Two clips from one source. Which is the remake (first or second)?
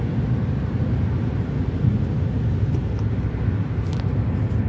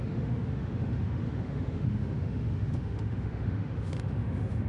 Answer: second